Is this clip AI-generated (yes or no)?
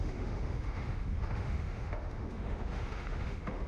yes